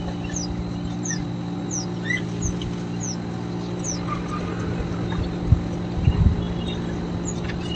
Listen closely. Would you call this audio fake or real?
real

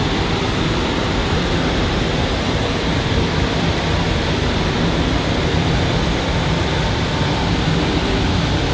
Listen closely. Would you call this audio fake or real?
fake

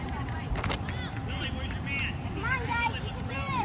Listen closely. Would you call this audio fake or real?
fake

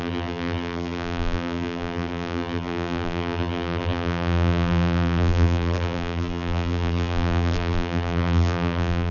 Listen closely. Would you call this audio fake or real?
fake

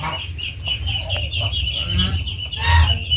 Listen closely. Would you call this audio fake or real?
real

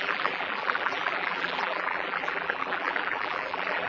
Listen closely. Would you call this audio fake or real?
fake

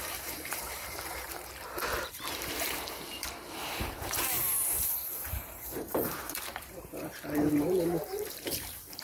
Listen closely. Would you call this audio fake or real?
fake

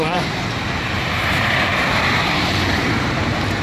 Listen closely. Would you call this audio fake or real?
fake